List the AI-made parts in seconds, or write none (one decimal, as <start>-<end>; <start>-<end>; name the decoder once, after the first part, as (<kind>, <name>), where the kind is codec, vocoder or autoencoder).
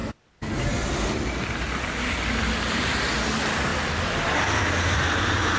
none